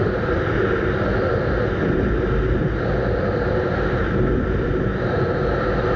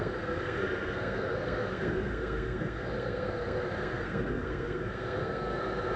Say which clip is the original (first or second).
first